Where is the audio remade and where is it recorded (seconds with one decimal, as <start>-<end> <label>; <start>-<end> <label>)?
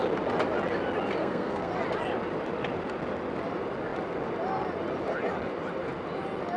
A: 0.0-1.2 recorded; 1.2-1.7 remade; 1.7-6.6 recorded